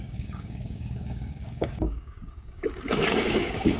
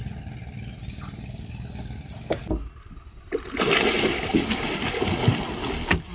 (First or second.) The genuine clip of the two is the second